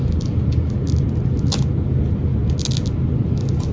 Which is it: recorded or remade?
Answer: recorded